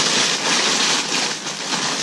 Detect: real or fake real